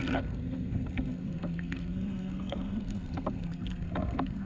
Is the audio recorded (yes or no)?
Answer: no